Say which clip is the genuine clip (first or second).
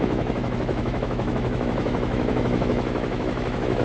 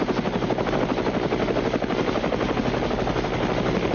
second